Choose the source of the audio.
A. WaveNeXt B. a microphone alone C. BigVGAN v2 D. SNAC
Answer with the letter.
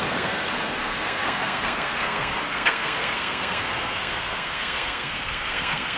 D